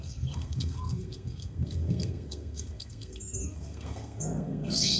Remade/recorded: remade